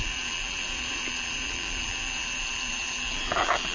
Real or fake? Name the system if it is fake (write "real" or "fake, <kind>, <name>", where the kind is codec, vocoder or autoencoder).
fake, vocoder, BigVGAN v2